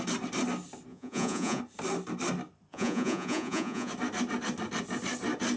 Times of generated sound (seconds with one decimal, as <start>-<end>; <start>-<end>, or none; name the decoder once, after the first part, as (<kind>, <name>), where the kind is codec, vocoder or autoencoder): 0.9-1.6 (vocoder, Vocos); 2.7-3.9